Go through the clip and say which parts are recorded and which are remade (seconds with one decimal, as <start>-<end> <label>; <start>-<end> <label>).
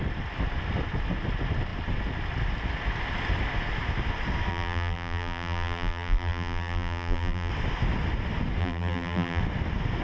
0.0-4.5 recorded; 4.5-7.5 remade; 7.5-8.6 recorded; 8.6-9.4 remade; 9.4-10.0 recorded